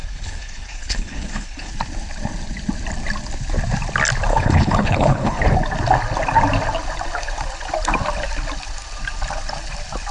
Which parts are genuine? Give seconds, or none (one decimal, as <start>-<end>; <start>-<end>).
1.7-4.3; 5.4-10.1